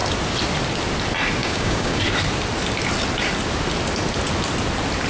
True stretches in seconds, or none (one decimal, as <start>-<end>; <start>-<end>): 0.0-1.4; 2.0-5.1